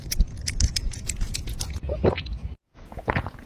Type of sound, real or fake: fake